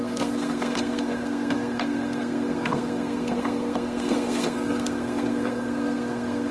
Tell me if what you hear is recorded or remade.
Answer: remade